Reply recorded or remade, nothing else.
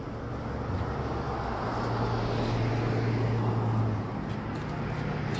recorded